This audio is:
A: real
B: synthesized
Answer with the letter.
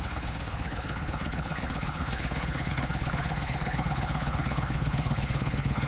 B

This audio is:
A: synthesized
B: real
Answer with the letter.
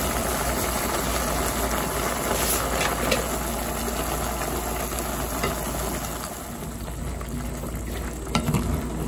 B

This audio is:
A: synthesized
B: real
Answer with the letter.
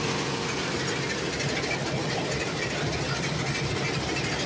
B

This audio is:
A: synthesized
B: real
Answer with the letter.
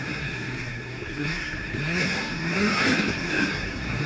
A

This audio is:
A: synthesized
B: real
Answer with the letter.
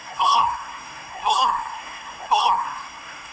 A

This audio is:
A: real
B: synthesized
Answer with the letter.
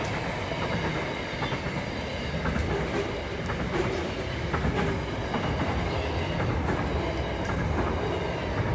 A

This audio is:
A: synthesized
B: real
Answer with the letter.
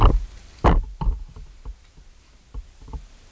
B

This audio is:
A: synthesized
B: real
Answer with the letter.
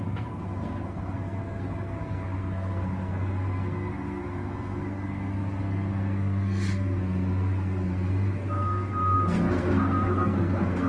A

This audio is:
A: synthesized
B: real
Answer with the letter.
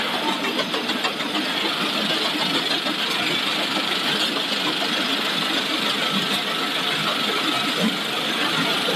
B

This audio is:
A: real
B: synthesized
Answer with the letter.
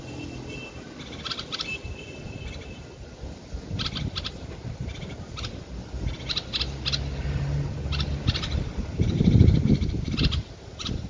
A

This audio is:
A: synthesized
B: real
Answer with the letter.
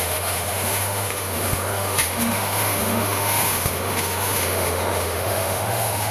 A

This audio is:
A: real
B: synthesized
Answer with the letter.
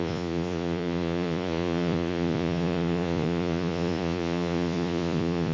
B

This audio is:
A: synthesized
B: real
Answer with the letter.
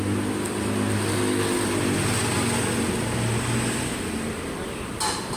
B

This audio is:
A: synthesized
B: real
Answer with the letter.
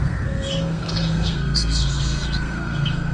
A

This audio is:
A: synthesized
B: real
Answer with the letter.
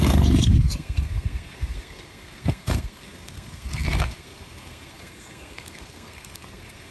A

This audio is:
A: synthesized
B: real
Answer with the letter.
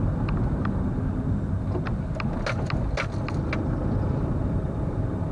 B